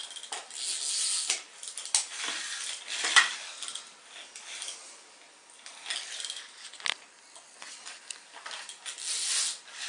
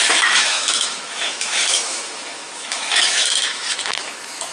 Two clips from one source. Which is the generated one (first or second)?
second